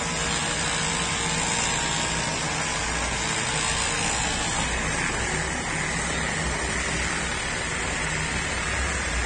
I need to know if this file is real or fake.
real